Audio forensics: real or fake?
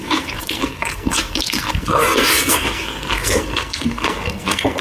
fake